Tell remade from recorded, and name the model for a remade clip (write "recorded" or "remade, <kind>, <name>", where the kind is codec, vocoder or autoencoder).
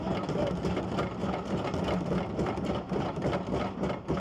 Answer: recorded